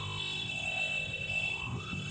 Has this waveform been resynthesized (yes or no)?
yes